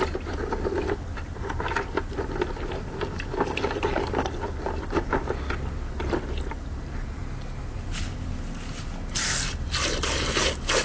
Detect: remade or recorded recorded